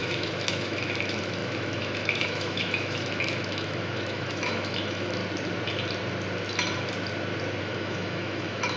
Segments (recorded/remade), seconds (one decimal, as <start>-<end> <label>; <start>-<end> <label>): 0.0-5.2 remade; 5.2-7.6 recorded; 7.6-8.8 remade